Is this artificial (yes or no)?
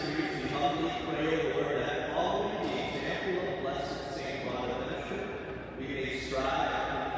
yes